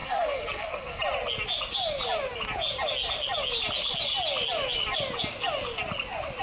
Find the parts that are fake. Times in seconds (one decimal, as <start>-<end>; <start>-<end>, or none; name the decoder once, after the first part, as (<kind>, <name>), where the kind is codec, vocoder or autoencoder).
0.0-1.0 (codec, SNAC)